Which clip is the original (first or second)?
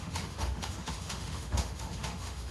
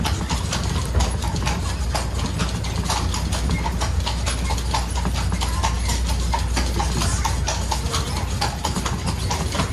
second